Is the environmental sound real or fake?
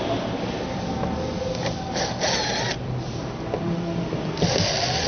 real